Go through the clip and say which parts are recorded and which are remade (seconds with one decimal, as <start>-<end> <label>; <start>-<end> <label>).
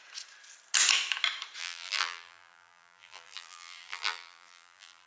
0.0-1.6 recorded; 1.6-5.1 remade